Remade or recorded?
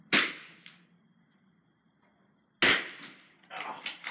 recorded